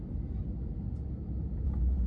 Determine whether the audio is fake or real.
real